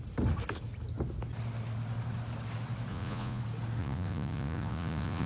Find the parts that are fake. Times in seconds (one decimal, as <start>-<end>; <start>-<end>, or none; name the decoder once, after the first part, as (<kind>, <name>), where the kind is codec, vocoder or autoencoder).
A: 2.9-3.4 (vocoder, Vocos); 3.8-5.3